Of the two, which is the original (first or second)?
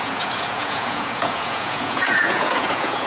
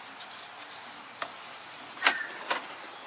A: second